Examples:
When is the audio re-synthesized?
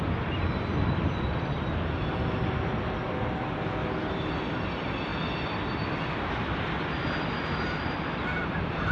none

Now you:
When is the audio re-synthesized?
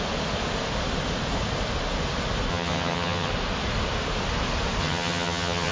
2.5-3.3 (vocoder, HiFi-GAN); 4.8-5.7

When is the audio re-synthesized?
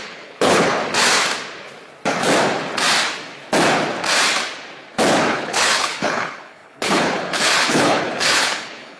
0.0-0.8 (codec, HILCodec); 5.3-9.0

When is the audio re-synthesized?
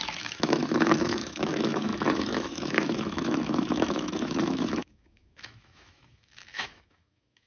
0.0-7.5 (autoencoder, DAC-VAE)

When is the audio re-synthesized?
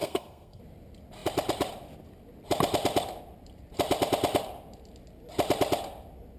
0.0-0.6 (codec, SNAC)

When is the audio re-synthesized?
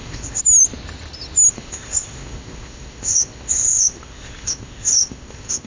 0.0-0.4 (codec, ZipCodec); 1.5-5.7